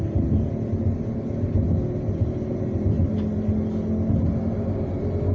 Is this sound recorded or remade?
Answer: recorded